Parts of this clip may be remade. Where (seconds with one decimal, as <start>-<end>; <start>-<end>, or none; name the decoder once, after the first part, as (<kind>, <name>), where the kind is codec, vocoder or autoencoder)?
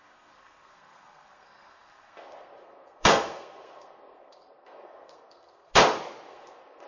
0.0-5.7 (codec, SNAC); 6.3-6.9